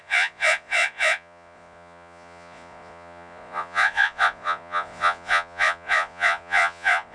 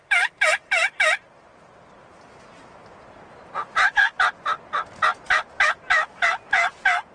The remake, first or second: first